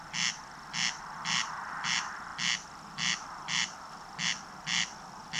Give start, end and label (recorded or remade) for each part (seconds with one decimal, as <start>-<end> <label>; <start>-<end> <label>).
0.0-5.4 recorded

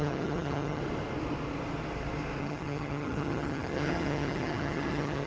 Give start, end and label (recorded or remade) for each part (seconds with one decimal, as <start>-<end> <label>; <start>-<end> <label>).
0.0-0.8 remade; 0.8-2.4 recorded; 2.4-5.3 remade